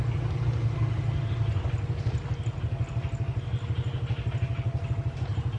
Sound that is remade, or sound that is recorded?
recorded